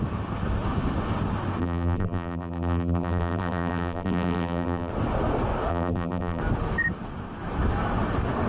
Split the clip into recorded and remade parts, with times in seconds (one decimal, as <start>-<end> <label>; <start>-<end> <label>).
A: 0.0-1.6 recorded; 1.6-4.9 remade; 4.9-5.7 recorded; 5.7-6.4 remade; 6.4-8.5 recorded